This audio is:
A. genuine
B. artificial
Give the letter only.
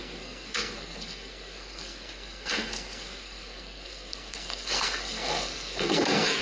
B